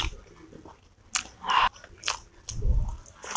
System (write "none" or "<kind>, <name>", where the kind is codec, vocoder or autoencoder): none